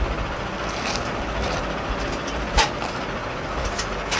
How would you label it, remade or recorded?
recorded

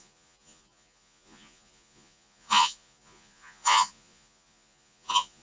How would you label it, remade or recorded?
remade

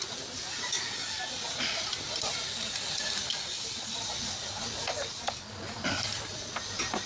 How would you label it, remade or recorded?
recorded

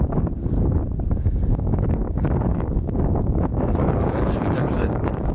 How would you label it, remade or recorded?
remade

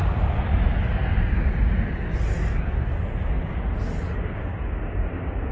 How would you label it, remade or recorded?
recorded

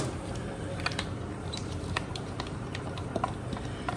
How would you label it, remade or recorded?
remade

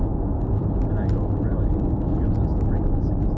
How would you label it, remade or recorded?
recorded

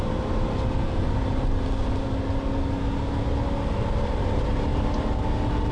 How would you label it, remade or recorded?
recorded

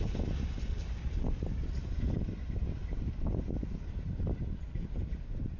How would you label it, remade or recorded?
recorded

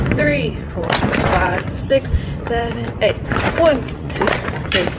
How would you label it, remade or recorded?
remade